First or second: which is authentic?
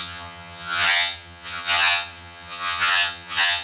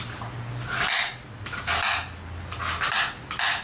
second